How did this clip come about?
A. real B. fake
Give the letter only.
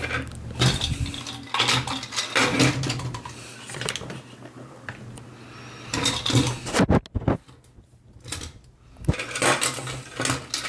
A